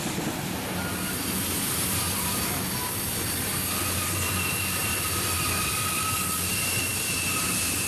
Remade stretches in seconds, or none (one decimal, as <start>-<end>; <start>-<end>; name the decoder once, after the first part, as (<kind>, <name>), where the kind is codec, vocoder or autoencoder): none